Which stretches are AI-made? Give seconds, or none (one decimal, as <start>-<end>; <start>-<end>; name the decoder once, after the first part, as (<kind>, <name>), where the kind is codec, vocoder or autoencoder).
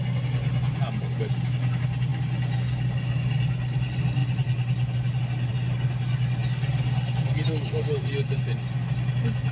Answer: none